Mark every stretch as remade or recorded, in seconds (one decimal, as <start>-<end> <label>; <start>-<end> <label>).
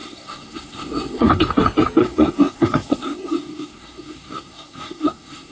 0.0-1.5 remade; 1.5-2.0 recorded; 2.0-5.5 remade